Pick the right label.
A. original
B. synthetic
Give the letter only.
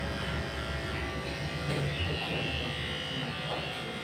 A